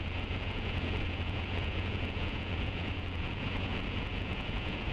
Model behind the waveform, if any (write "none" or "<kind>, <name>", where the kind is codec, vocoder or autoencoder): vocoder, Vocos